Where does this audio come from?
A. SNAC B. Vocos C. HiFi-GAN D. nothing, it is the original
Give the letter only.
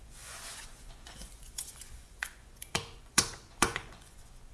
B